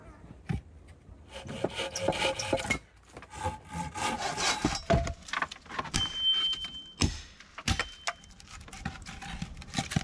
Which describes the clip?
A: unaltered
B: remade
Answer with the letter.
A